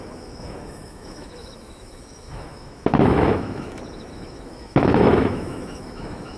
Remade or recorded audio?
remade